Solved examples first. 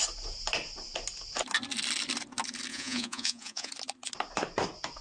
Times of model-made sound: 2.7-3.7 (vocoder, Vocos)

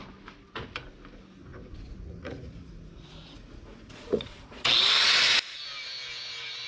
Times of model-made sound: 1.5-4.7 (vocoder, Vocos)

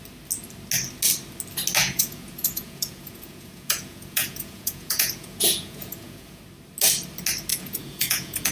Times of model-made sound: 1.8-6.4 (vocoder, Vocos); 7.5-8.5

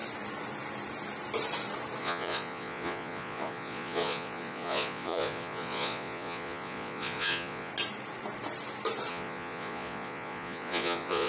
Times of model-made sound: 2.0-7.7 (vocoder, Vocos); 9.1-11.3

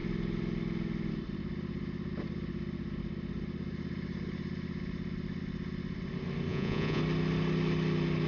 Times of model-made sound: 6.5-7.0 (vocoder, Vocos)